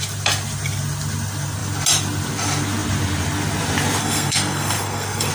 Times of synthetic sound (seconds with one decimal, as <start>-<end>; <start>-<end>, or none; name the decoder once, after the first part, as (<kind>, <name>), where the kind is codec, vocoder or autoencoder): 4.0-5.3 (codec, SNAC)